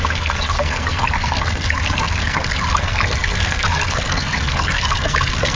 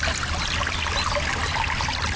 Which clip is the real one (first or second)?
second